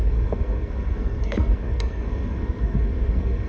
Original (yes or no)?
no